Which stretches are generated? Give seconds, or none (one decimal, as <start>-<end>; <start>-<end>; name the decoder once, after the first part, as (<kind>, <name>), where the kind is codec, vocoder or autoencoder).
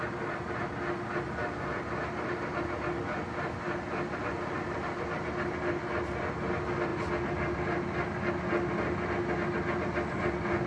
none